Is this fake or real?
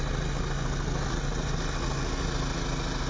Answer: real